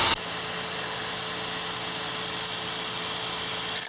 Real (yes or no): yes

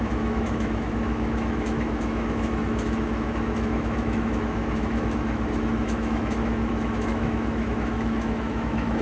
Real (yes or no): no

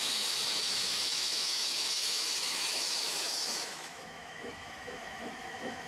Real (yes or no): no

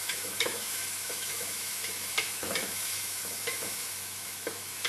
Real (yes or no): no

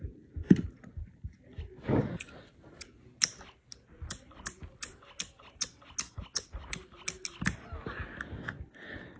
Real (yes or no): yes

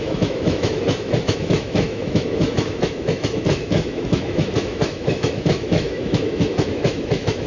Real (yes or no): no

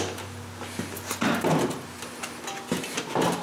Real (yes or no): yes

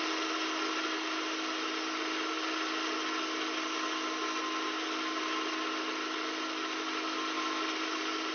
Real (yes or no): yes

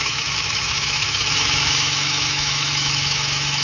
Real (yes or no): no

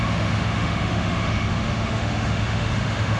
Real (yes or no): no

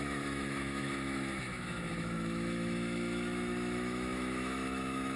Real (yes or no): no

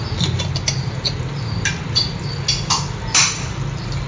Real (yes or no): yes